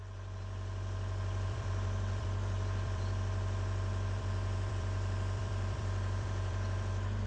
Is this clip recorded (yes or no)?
no